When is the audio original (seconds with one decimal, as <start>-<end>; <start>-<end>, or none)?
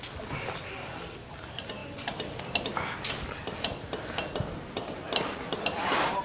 0.0-6.2